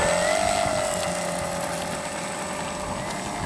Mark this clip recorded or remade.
recorded